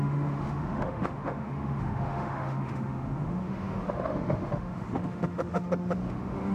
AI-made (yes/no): yes